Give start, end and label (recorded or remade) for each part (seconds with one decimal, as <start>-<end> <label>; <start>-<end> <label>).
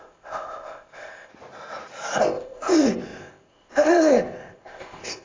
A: 0.0-1.3 remade; 1.3-2.2 recorded; 2.2-5.2 remade